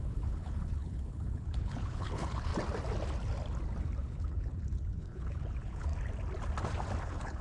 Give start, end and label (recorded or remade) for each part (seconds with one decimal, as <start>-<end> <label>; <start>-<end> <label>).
0.0-2.5 remade; 2.5-4.0 recorded; 4.0-5.9 remade; 5.9-7.0 recorded; 7.0-7.4 remade